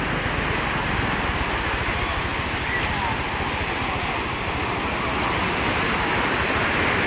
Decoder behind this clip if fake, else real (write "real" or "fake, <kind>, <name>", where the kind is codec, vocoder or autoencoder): real